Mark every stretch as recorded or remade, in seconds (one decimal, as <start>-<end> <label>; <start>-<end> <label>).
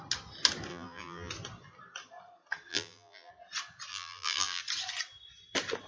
0.0-0.7 recorded; 0.7-1.3 remade; 1.3-2.7 recorded; 2.7-3.3 remade; 3.3-3.9 recorded; 3.9-4.6 remade; 4.6-5.9 recorded